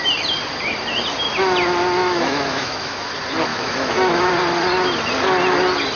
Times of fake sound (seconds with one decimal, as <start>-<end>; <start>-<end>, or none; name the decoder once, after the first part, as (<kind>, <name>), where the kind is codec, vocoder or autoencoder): 2.0-3.1 (autoencoder, DAC-VAE); 3.5-4.3